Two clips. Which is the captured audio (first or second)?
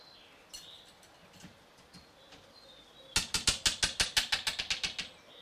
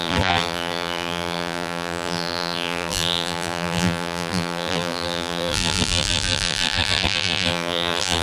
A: first